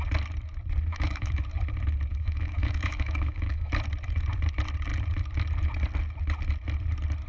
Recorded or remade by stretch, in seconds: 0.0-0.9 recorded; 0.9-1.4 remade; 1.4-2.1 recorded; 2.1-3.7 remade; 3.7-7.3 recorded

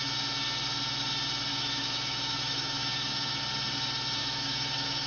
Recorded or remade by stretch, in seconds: 0.0-1.5 recorded; 1.5-3.4 remade; 3.4-4.2 recorded; 4.2-5.1 remade

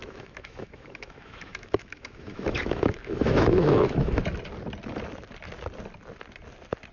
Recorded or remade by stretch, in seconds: 0.0-4.1 remade; 4.1-6.9 recorded

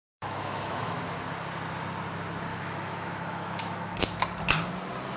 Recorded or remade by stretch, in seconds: 0.0-1.0 remade; 1.0-2.5 recorded; 2.5-4.2 remade; 4.2-5.2 recorded

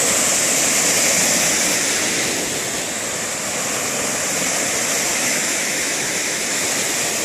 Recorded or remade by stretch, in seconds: 0.0-5.2 recorded; 5.2-6.7 remade; 6.7-7.2 recorded

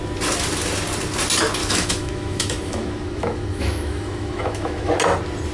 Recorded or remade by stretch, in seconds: 0.0-1.6 recorded; 1.6-4.9 remade; 4.9-5.5 recorded

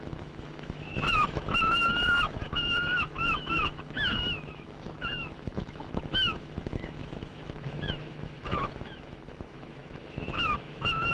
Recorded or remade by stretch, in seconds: 0.0-11.1 remade